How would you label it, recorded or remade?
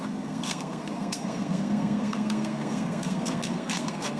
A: remade